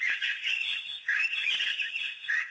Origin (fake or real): fake